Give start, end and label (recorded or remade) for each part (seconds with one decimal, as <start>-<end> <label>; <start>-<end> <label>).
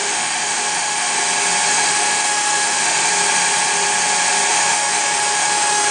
0.0-1.2 remade; 1.2-1.7 recorded; 1.7-3.1 remade; 3.1-4.5 recorded; 4.5-5.9 remade